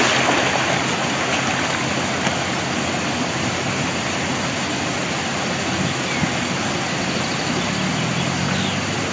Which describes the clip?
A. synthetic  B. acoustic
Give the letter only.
B